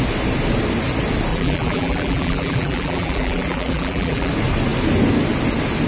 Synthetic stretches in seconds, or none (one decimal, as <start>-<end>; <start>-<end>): 1.3-4.3